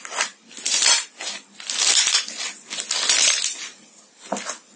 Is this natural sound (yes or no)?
yes